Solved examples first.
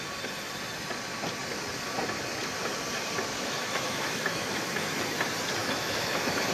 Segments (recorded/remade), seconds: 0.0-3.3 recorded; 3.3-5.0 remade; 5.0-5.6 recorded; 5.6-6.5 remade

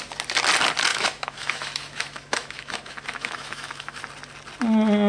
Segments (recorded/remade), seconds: 0.0-0.9 recorded; 0.9-4.0 remade; 4.0-5.1 recorded